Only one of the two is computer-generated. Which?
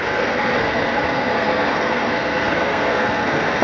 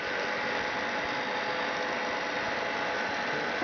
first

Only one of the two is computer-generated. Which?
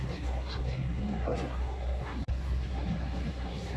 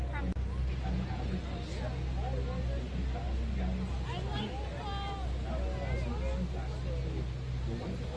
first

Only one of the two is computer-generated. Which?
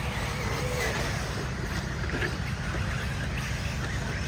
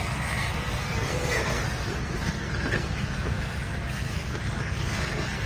second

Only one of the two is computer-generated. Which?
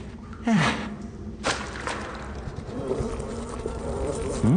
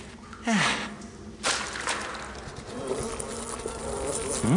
first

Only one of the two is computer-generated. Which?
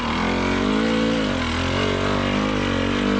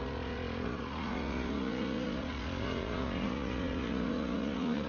second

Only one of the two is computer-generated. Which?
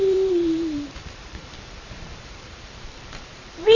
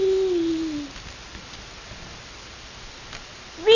first